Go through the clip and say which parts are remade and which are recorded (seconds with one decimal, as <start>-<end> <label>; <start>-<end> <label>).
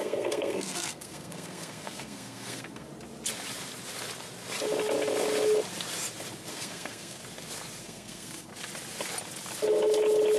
0.0-2.9 remade; 2.9-6.5 recorded; 6.5-7.2 remade; 7.2-7.8 recorded; 7.8-8.5 remade; 8.5-10.4 recorded